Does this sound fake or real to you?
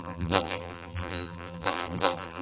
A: fake